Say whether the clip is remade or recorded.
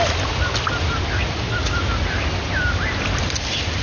recorded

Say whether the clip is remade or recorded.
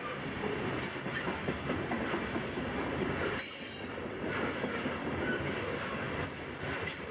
recorded